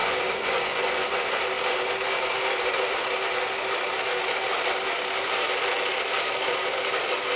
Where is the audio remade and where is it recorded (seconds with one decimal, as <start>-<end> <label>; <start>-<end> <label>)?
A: 0.0-1.4 remade; 1.4-7.4 recorded